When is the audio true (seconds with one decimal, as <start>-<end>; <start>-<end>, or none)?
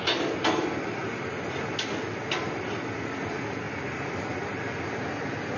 0.0-5.6